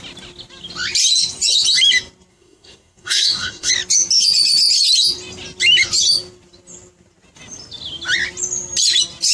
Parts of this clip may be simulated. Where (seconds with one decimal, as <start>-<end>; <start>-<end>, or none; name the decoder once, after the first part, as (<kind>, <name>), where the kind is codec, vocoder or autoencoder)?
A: 2.3-3.7 (codec, SNAC)